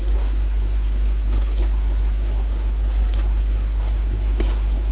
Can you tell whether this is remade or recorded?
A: remade